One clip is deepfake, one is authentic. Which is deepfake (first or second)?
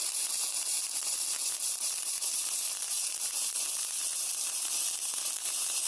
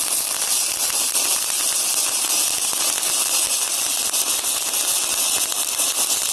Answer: first